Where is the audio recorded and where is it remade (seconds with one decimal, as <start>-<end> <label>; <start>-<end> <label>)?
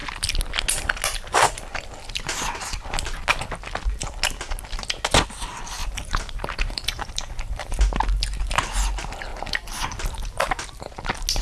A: 0.0-5.8 recorded; 5.8-7.8 remade; 7.8-9.3 recorded; 9.3-10.9 remade; 10.9-11.4 recorded